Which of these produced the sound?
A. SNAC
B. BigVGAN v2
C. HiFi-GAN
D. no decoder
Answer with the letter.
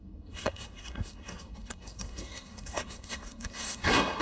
A